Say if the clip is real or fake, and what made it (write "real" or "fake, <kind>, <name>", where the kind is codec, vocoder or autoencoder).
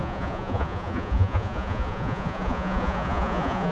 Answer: fake, vocoder, Vocos